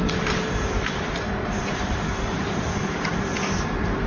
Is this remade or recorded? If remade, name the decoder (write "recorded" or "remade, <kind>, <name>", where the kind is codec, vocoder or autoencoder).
remade, vocoder, BigVGAN v2